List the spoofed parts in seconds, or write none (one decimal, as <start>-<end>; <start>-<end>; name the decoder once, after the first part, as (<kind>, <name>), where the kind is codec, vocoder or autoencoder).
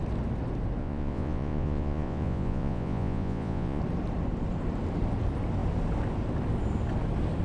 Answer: 0.8-3.8 (vocoder, Vocos)